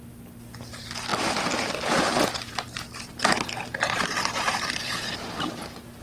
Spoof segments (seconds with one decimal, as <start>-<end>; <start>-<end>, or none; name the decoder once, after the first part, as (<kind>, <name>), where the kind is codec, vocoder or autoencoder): 1.1-3.3 (vocoder, BigVGAN v2); 3.7-5.5